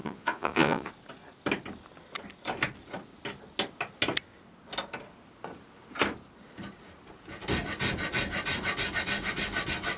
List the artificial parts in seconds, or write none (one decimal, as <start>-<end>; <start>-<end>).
0.0-0.9